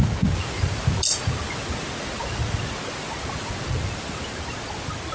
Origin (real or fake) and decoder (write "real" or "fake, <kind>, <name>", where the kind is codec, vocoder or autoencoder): real